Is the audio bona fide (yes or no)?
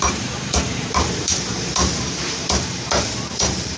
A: no